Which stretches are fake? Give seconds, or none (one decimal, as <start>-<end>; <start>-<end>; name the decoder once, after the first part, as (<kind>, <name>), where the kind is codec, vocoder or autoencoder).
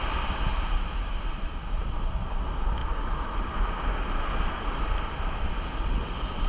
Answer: 0.5-1.9 (vocoder, BigVGAN v2); 2.8-5.5